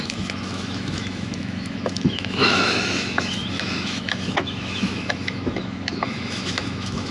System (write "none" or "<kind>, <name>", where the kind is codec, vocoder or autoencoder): autoencoder, DAC-VAE